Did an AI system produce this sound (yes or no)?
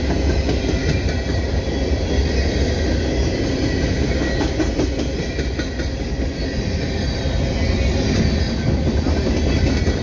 no